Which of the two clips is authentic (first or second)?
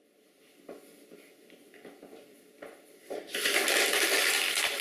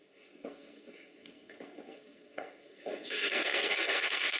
first